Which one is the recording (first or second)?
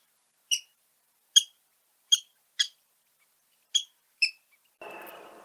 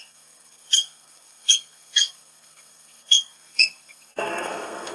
first